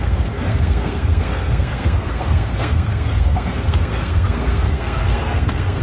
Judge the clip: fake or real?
fake